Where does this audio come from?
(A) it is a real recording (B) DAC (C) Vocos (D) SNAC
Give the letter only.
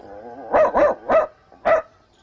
A